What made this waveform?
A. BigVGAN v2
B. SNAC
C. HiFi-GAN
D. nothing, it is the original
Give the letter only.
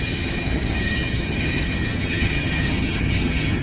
C